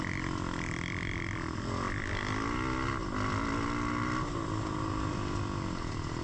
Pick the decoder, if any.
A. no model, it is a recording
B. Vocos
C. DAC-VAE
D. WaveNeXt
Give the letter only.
A